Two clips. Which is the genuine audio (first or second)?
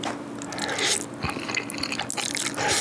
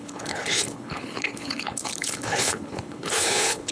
first